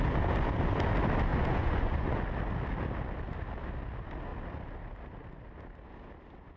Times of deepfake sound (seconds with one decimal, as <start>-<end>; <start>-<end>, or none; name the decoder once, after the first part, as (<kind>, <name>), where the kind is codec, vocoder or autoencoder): 1.3-2.2 (vocoder, Vocos)